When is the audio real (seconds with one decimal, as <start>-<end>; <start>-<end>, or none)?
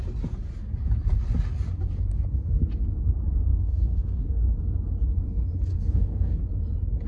0.0-3.5; 4.4-5.7; 6.4-7.1